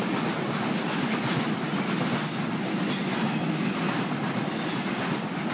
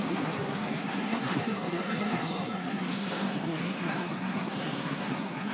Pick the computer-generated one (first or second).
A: second